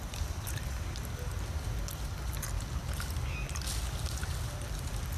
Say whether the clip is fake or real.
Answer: real